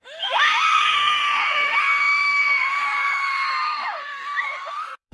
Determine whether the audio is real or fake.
fake